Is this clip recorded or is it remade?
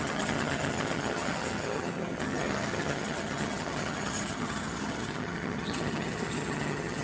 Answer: remade